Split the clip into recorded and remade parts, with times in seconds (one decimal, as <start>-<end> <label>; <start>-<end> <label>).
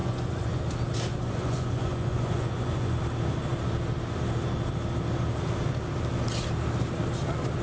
0.0-0.6 remade; 0.6-1.1 recorded; 1.1-3.0 remade; 3.0-7.6 recorded